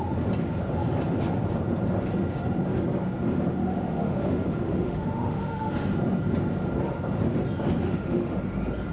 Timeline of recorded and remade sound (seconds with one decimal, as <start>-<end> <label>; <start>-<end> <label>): 0.0-3.6 recorded; 3.6-5.7 remade; 5.7-7.8 recorded; 7.8-8.4 remade; 8.4-8.9 recorded